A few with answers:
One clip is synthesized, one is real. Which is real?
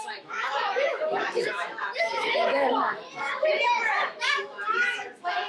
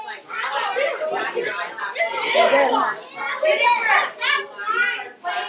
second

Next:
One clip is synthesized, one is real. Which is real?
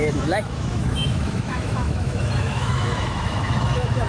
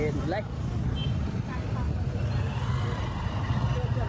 second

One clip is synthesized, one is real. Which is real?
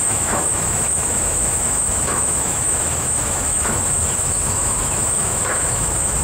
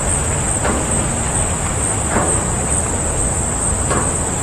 second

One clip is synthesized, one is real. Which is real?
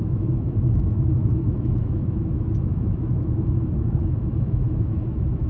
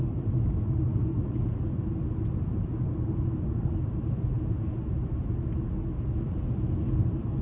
second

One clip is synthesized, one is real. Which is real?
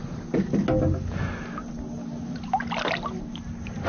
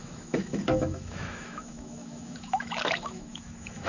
first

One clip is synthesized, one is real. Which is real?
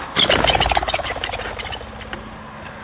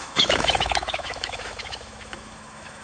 first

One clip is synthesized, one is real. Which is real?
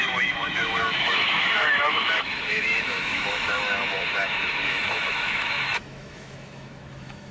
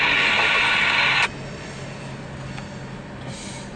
second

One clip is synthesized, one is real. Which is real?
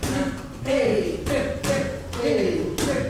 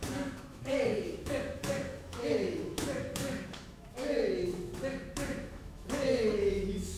first